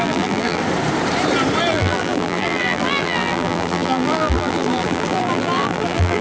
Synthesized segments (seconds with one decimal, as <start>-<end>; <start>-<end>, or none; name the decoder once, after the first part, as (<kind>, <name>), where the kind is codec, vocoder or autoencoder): 0.0-0.6 (vocoder, BigVGAN v2); 1.7-6.2